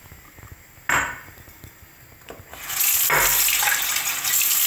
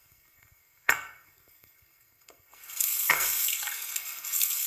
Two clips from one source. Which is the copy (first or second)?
second